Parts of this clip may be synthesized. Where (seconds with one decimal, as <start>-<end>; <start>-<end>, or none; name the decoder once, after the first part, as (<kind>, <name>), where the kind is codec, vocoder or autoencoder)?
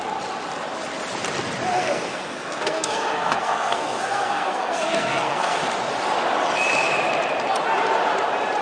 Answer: 1.7-5.6 (codec, SNAC)